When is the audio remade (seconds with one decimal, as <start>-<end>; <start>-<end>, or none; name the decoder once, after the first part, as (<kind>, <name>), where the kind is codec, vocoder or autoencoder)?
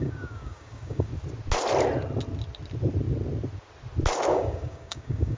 0.0-1.1 (codec, DAC); 4.3-5.4